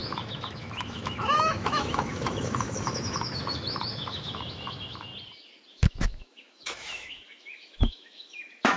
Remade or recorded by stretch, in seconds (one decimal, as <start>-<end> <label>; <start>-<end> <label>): 0.0-5.1 remade; 5.1-5.7 recorded; 5.7-8.8 remade

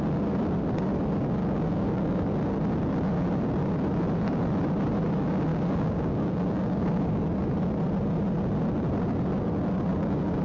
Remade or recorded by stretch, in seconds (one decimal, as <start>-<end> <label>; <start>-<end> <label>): 0.0-1.4 recorded; 1.4-2.2 remade; 2.2-5.5 recorded; 5.5-7.2 remade; 7.2-10.4 recorded

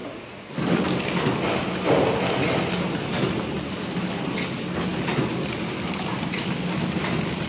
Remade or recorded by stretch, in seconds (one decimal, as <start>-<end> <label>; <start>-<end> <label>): 0.0-7.5 recorded

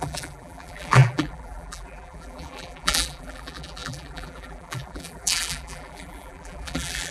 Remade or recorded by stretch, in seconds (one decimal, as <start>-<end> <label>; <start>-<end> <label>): 0.0-7.1 remade

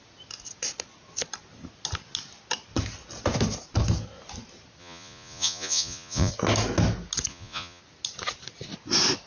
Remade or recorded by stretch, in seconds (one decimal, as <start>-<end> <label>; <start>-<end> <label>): 0.0-4.8 recorded; 4.8-6.3 remade; 6.3-7.3 recorded; 7.3-7.8 remade; 7.8-9.3 recorded

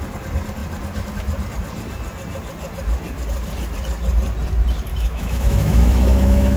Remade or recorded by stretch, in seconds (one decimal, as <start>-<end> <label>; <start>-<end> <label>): 0.0-4.9 recorded; 4.9-6.6 remade

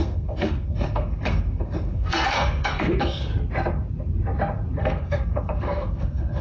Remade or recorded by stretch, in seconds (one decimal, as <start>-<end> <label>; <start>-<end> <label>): 0.0-3.3 remade; 3.3-4.8 recorded; 4.8-6.4 remade